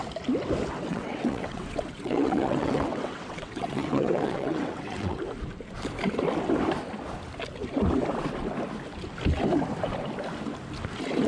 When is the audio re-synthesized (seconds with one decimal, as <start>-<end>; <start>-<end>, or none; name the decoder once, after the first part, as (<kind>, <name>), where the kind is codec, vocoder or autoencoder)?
0.9-5.2 (vocoder, WaveNeXt)